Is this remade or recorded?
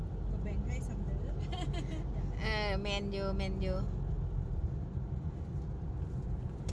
recorded